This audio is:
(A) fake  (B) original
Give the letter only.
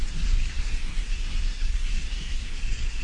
A